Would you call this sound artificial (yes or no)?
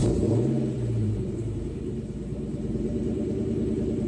yes